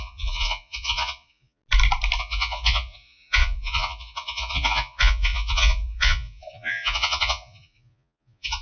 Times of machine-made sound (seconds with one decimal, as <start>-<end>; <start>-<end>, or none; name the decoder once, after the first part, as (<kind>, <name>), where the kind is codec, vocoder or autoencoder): 0.0-1.6 (vocoder, Vocos); 2.2-8.6